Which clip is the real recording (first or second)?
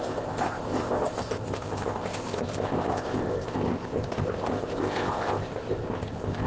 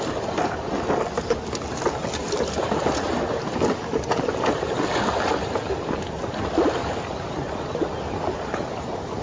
second